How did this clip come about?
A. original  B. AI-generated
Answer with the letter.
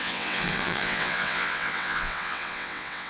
B